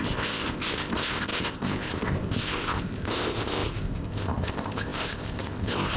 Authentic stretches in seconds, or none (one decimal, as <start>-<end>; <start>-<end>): none